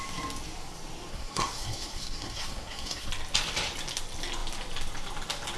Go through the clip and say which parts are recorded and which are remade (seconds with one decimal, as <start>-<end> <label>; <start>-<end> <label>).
0.0-1.1 recorded; 1.1-3.1 remade; 3.1-5.6 recorded